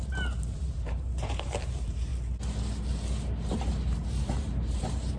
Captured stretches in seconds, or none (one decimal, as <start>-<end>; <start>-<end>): 2.1-3.5